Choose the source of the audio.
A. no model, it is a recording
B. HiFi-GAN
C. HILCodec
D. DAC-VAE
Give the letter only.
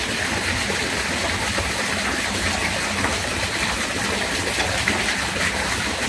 A